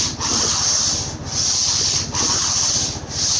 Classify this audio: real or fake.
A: real